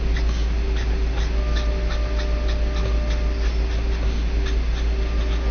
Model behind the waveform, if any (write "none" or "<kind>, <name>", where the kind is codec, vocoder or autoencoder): none